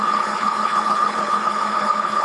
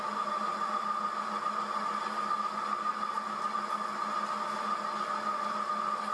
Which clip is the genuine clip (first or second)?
second